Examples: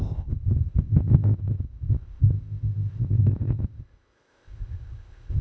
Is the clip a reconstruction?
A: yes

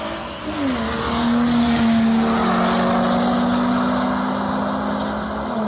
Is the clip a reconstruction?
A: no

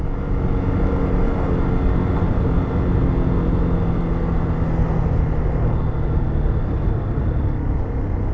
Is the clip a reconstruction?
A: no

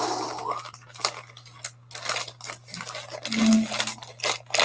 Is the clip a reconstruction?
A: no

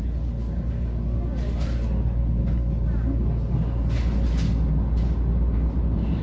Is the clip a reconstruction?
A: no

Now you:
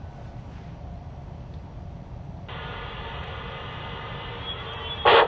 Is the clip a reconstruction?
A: no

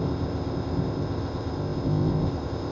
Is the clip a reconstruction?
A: yes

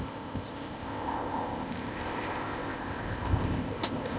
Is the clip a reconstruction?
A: yes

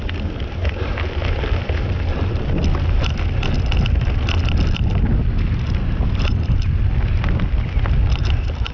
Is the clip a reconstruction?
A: no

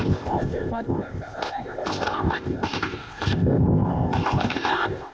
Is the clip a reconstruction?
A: yes